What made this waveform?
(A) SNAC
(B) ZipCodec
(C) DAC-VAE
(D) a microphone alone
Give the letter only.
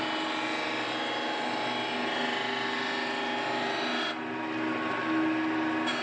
D